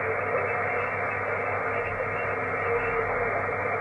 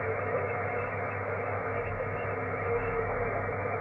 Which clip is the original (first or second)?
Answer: first